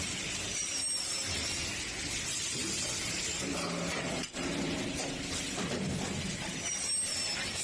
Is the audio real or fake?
real